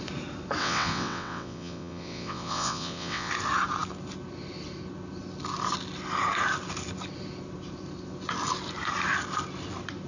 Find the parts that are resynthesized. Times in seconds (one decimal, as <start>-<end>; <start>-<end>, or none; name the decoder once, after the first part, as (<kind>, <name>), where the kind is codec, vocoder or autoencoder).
0.6-3.3 (vocoder, WaveNeXt)